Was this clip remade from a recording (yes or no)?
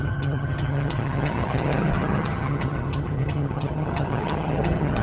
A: yes